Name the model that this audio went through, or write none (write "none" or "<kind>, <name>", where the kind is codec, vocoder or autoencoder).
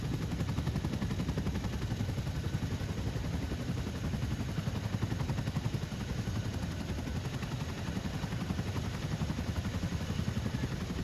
none